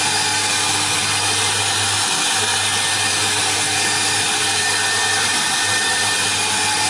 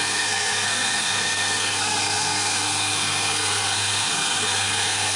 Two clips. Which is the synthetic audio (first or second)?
second